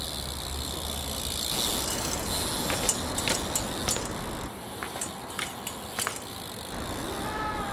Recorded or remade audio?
recorded